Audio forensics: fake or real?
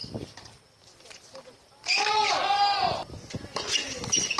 real